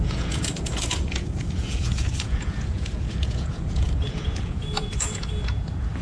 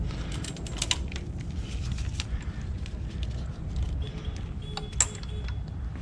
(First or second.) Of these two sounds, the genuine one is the second